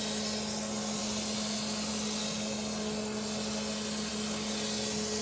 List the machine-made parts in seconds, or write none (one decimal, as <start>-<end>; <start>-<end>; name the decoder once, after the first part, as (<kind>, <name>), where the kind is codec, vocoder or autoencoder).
none